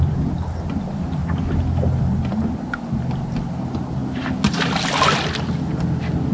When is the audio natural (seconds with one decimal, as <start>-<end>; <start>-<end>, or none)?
0.0-6.3